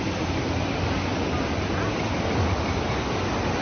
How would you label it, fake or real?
real